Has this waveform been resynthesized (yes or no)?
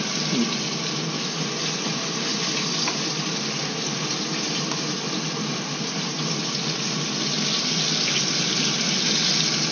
no